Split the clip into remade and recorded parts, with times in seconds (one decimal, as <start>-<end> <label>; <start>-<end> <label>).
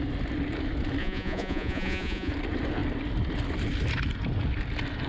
0.0-1.0 recorded; 1.0-2.3 remade; 2.3-5.1 recorded